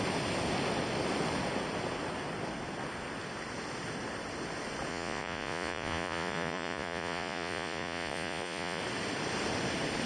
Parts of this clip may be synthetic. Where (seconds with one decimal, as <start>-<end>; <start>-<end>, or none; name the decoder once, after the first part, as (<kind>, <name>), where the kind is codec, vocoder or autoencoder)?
4.9-8.8 (vocoder, Vocos)